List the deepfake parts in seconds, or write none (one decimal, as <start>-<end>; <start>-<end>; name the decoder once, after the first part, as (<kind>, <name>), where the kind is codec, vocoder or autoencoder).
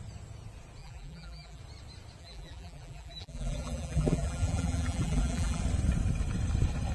0.8-1.6 (vocoder, BigVGAN v2); 2.2-5.6